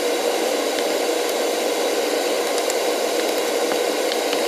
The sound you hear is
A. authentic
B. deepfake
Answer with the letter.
A